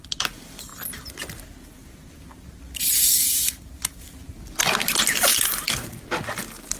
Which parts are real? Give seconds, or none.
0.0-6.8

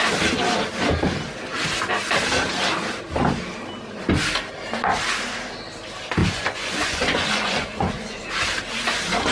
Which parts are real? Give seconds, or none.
0.0-6.2; 8.3-9.3

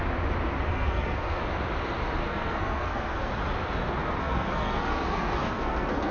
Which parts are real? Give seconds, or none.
0.0-0.7; 1.4-2.2; 3.3-4.2